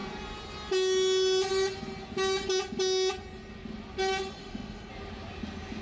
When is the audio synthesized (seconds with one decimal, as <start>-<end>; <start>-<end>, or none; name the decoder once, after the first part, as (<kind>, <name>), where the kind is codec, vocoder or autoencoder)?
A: 4.4-4.9 (autoencoder, DAC-VAE)